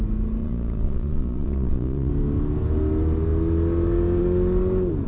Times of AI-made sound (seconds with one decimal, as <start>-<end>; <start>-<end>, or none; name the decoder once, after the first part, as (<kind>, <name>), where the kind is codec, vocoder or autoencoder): 0.4-2.1 (vocoder, Vocos)